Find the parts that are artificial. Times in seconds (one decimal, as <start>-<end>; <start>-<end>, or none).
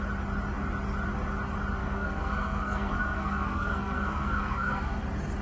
1.8-5.0